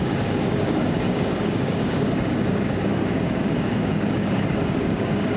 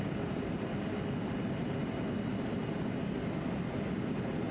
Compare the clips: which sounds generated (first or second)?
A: first